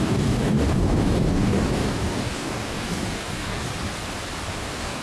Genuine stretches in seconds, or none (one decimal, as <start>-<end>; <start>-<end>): 3.7-4.5